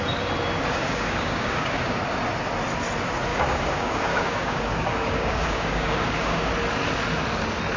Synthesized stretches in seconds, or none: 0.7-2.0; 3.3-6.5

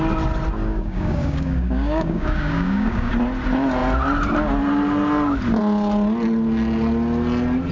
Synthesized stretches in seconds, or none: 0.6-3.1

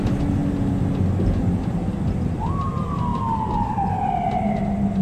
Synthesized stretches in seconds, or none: none

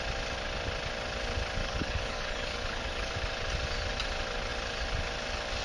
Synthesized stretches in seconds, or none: 1.6-3.1

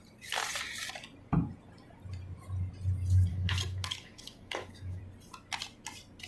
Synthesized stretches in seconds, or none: 3.3-5.0

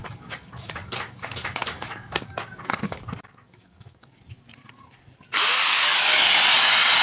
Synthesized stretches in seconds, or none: 0.0-4.2; 5.7-6.3

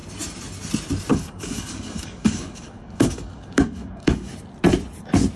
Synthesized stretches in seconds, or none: 1.1-4.3